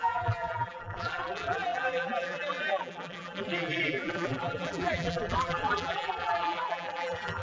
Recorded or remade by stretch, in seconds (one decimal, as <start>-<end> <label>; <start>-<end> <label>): 0.0-7.4 remade